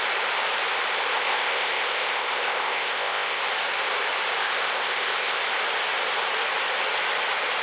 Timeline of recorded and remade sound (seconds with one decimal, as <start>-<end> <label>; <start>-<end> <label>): 0.0-1.1 recorded; 1.1-3.4 remade; 3.4-4.4 recorded; 4.4-5.4 remade; 5.4-7.6 recorded